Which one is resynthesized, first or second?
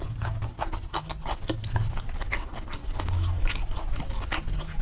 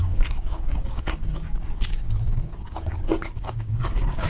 second